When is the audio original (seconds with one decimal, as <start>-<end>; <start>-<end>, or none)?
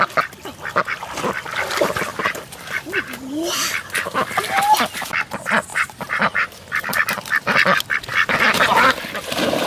0.0-2.1; 3.5-5.7; 6.8-9.7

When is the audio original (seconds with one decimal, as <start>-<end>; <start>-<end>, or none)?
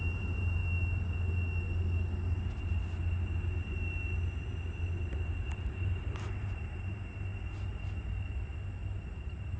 0.6-4.7; 7.3-9.2